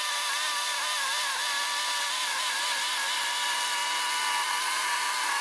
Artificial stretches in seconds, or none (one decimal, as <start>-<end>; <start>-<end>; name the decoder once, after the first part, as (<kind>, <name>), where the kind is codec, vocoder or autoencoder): none